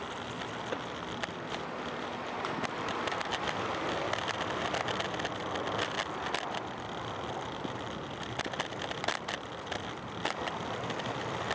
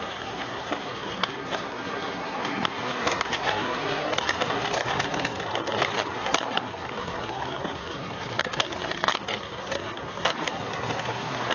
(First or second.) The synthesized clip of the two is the second